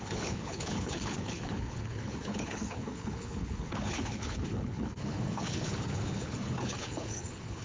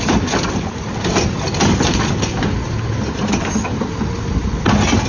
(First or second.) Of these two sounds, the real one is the second